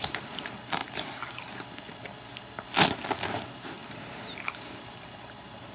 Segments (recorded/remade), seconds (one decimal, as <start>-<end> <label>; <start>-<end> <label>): 0.0-0.8 remade; 0.8-3.3 recorded; 3.3-3.8 remade; 3.8-4.4 recorded; 4.4-5.7 remade